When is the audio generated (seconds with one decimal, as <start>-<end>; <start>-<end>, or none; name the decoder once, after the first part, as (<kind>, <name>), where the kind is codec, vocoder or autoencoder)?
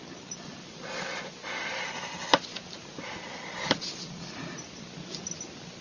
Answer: none